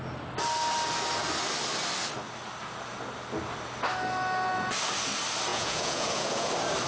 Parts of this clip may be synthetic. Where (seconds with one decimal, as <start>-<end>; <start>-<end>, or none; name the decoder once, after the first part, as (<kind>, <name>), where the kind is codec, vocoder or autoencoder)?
5.5-6.5 (vocoder, Vocos)